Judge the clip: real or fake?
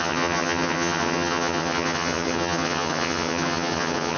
fake